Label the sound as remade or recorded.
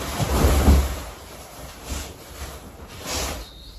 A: recorded